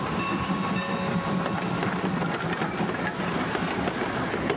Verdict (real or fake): real